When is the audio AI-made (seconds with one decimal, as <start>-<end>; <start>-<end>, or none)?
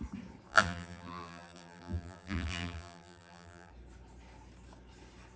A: 0.5-3.7